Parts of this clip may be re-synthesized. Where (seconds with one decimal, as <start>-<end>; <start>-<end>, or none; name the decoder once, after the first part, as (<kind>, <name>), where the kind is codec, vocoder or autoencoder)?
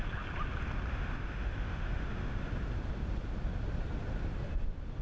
0.9-2.5 (autoencoder, DAC-VAE)